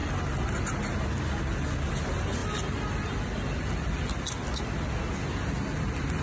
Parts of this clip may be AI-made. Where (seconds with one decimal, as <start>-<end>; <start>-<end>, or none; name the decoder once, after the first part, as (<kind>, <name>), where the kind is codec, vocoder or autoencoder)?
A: none